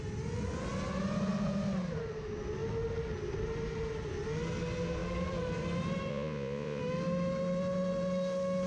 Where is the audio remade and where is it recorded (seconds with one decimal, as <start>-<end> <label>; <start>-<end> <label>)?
0.0-6.1 recorded; 6.1-6.8 remade; 6.8-8.7 recorded